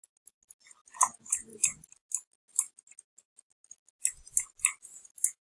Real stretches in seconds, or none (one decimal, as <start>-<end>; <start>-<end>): 0.0-5.6